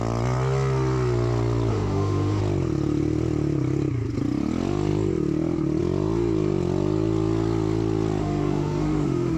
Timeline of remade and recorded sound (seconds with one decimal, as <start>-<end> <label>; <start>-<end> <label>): 0.0-1.7 recorded; 1.7-2.4 remade; 2.4-8.2 recorded; 8.2-9.4 remade